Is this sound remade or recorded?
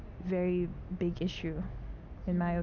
recorded